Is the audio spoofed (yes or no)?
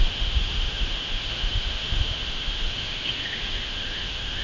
yes